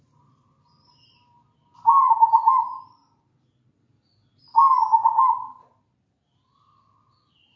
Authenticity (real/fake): real